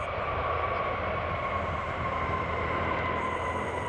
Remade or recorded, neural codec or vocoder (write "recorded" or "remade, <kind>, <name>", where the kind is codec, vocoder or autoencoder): recorded